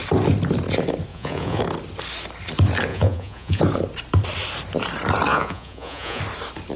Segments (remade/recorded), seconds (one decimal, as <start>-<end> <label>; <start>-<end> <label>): 0.0-1.1 recorded; 1.1-1.6 remade; 1.6-2.9 recorded; 2.9-3.6 remade; 3.6-5.3 recorded; 5.3-6.2 remade; 6.2-6.8 recorded